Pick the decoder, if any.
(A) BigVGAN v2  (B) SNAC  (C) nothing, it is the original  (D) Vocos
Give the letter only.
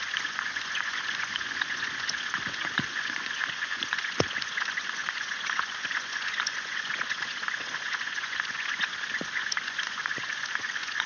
D